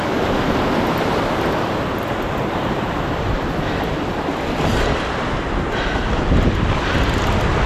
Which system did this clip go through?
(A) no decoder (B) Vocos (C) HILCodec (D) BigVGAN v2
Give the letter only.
A